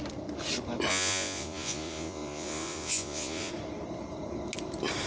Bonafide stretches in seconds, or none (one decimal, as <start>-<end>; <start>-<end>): 0.0-0.9; 3.5-5.1